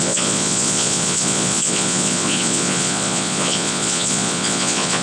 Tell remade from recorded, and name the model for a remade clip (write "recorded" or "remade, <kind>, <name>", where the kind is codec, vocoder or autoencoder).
remade, vocoder, Vocos